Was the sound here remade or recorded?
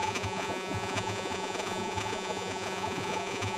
remade